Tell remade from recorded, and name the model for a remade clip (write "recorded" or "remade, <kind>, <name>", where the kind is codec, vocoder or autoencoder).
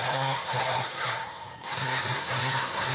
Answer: remade, codec, SNAC